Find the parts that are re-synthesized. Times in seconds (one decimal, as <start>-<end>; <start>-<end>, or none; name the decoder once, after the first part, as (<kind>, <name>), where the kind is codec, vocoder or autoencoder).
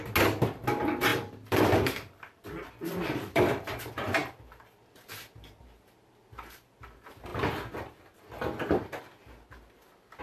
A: 1.1-3.8 (vocoder, BigVGAN v2); 4.2-4.8